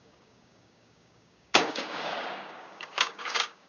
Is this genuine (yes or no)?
no